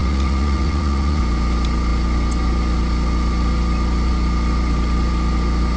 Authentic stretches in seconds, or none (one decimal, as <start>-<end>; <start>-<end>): 1.2-5.8